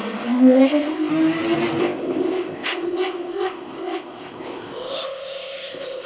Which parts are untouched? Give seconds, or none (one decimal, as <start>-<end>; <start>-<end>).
1.1-1.8